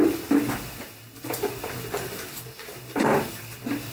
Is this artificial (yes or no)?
no